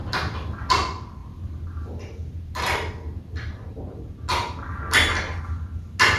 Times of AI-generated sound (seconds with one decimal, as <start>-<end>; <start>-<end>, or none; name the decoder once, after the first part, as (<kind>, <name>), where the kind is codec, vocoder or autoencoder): 1.2-3.8 (vocoder, BigVGAN v2)